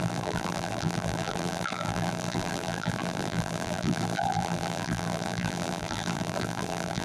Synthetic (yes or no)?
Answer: yes